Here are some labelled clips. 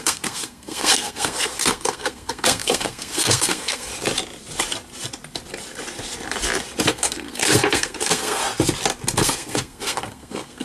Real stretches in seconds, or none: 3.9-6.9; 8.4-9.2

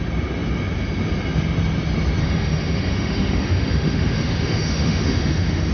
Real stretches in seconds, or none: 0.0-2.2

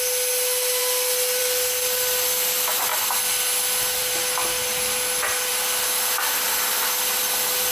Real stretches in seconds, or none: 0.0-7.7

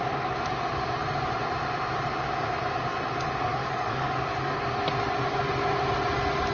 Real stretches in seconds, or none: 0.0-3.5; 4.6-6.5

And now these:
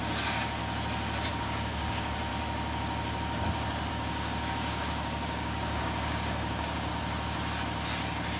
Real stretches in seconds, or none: 0.6-1.3; 2.3-3.9; 6.9-8.4

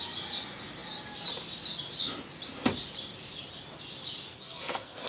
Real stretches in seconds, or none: 0.0-4.3